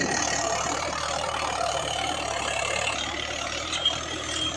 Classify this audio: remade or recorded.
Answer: remade